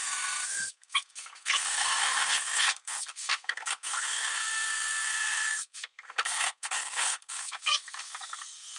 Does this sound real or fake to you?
fake